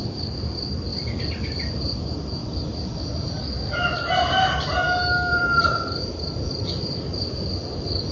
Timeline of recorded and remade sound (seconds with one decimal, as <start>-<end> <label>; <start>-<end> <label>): 0.0-0.9 remade; 0.9-1.7 recorded; 1.7-2.4 remade; 2.4-5.3 recorded; 5.3-8.1 remade